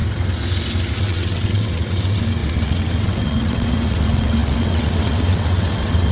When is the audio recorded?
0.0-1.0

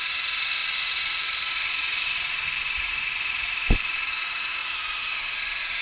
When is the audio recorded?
0.0-0.6; 4.1-5.8

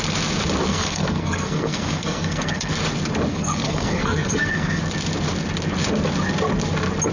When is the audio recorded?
0.0-0.7; 2.7-3.3; 4.8-7.1

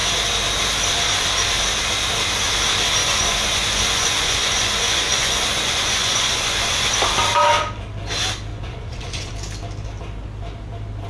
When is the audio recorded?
0.0-3.0; 6.9-8.5; 9.3-11.1

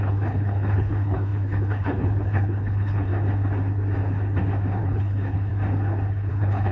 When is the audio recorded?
3.1-4.8; 5.5-6.3

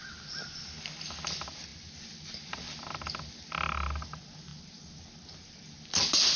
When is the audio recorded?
0.0-6.4